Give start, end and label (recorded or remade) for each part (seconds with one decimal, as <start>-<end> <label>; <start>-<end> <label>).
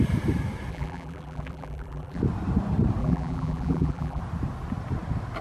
0.0-0.7 recorded; 0.7-2.2 remade; 2.2-3.0 recorded; 3.0-4.2 remade; 4.2-5.4 recorded